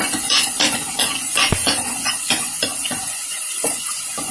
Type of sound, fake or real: fake